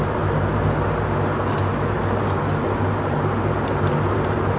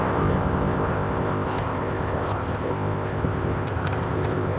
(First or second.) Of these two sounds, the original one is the first